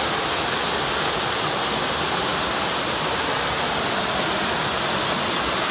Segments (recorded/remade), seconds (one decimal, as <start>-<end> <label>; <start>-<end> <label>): 0.0-5.7 recorded